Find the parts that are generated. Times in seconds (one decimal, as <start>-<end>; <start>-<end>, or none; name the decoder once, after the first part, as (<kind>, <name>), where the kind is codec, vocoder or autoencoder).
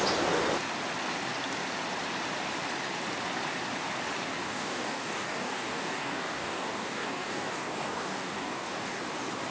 4.4-9.0 (codec, DAC)